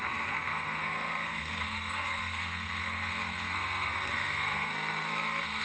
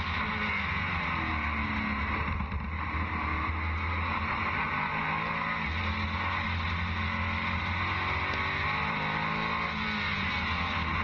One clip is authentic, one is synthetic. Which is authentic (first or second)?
second